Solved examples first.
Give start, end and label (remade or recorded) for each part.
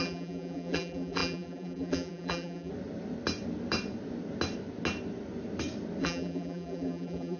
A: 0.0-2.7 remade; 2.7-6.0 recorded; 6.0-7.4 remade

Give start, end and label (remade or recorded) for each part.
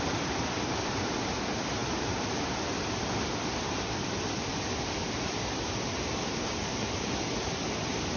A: 0.0-8.2 recorded